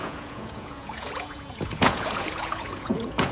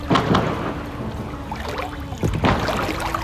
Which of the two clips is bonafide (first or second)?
second